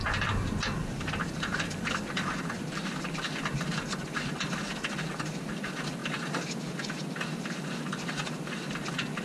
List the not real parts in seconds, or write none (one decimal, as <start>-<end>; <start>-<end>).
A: none